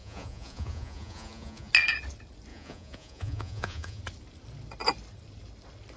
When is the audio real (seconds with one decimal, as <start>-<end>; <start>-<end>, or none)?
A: 1.7-2.5; 4.0-6.0